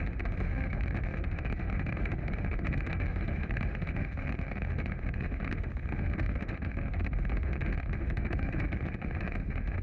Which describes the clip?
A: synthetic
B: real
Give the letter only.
A